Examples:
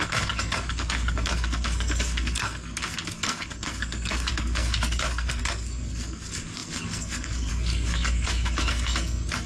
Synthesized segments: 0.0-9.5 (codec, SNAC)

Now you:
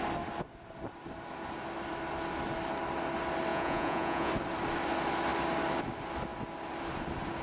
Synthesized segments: 3.5-4.3 (vocoder, Vocos)

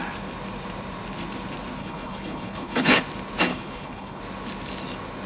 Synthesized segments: 1.8-3.0 (codec, HILCodec); 3.5-4.2

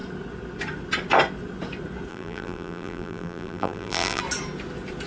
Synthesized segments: 2.1-4.2 (vocoder, BigVGAN v2)

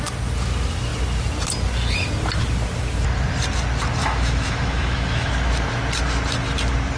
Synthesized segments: 4.0-5.3 (autoencoder, DAC-VAE)

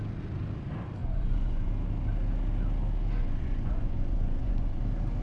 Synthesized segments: 1.0-1.7 (vocoder, Vocos); 3.2-4.8

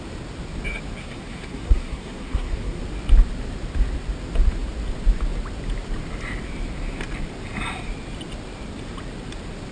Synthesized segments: 1.0-2.8 (codec, SNAC)